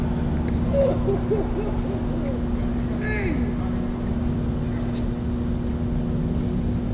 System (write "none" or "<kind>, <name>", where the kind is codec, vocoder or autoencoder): none